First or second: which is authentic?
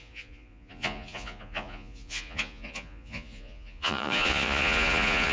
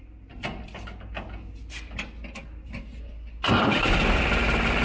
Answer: second